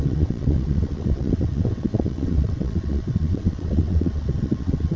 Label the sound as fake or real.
fake